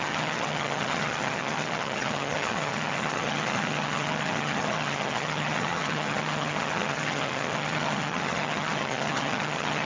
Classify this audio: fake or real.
fake